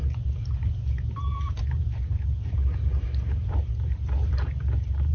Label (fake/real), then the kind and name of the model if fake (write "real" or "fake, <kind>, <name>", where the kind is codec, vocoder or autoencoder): fake, vocoder, BigVGAN v2